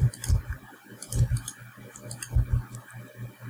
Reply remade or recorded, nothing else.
recorded